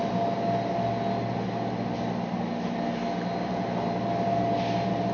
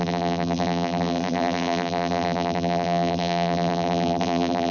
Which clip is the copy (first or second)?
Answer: second